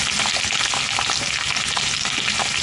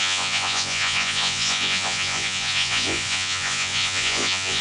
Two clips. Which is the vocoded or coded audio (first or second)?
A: second